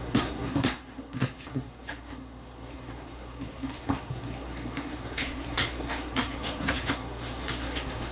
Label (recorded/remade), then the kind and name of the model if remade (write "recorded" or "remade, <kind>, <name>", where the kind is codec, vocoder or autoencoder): remade, codec, SNAC